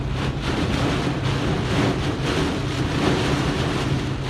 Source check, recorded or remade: recorded